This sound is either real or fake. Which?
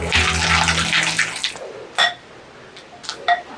real